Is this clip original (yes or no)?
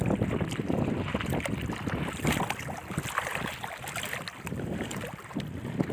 yes